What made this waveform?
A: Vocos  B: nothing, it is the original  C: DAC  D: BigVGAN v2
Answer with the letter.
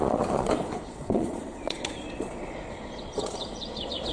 A